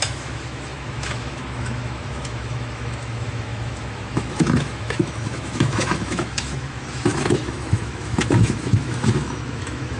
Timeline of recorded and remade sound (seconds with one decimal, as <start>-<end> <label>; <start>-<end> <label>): 0.0-10.0 remade